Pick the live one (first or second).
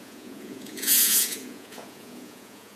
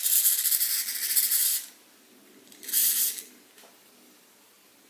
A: second